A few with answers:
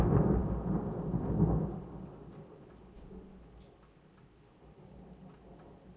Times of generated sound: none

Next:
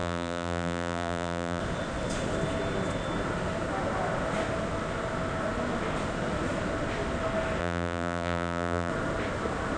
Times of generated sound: 0.0-1.6; 7.6-8.9